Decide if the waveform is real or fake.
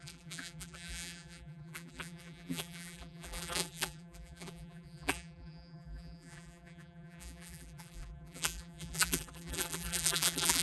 fake